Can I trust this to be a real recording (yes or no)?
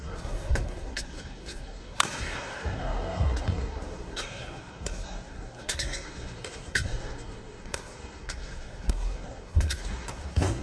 no